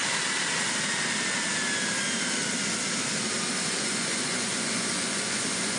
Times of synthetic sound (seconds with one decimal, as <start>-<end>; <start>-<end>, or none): 3.5-5.8